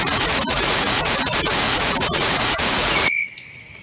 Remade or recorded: remade